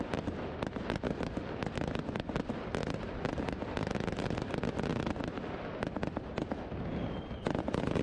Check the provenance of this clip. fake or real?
fake